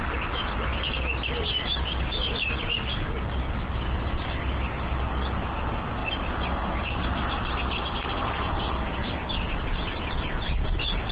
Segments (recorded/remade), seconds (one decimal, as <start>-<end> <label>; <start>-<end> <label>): 0.0-11.1 recorded